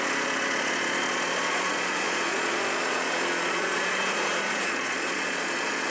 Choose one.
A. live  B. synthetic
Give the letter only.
B